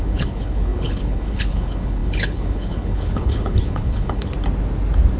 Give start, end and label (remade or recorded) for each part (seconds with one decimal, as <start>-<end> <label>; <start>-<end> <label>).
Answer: 0.0-4.3 remade; 4.3-5.2 recorded